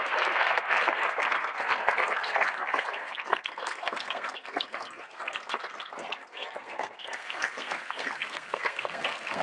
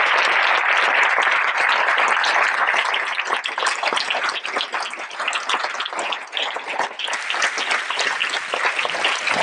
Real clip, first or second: second